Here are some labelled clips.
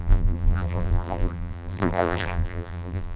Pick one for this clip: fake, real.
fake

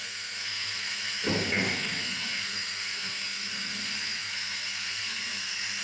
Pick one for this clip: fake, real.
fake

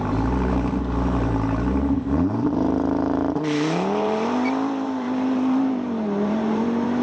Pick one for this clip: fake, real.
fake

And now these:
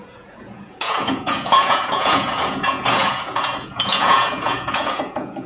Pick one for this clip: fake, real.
fake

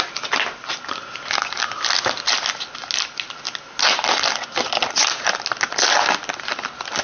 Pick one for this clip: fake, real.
real